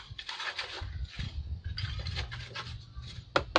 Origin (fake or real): real